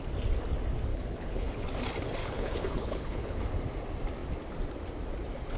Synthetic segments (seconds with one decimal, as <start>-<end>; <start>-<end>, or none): 0.9-1.7; 2.2-3.5